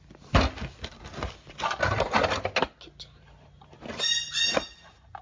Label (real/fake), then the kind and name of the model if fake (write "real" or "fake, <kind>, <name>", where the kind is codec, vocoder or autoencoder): real